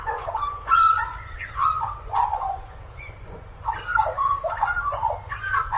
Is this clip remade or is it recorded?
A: remade